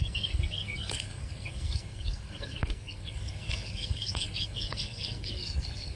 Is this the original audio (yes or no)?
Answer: no